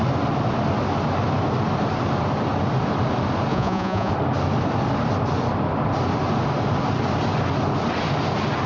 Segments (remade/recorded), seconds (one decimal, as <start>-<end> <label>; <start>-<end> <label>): 0.0-3.5 recorded; 3.5-4.1 remade; 4.1-8.7 recorded